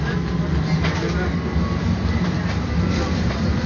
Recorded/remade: recorded